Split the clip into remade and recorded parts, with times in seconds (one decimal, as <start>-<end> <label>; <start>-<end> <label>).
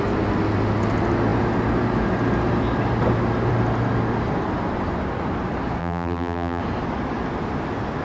0.0-5.8 recorded; 5.8-6.6 remade; 6.6-8.0 recorded